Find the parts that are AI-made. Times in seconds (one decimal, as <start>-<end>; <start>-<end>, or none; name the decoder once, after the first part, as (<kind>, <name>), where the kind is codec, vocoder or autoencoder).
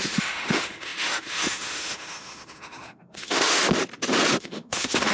0.0-3.6 (autoencoder, DAC-VAE); 4.4-5.1